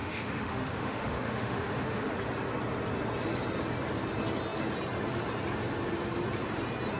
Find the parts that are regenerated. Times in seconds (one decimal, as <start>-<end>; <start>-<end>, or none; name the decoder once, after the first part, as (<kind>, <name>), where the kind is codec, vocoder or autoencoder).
0.0-2.1 (autoencoder, DAC-VAE)